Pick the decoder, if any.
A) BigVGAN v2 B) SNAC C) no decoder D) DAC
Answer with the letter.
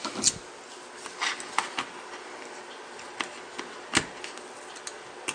C